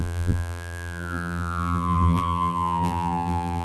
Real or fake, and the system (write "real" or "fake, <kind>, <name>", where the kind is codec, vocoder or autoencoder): fake, vocoder, BigVGAN v2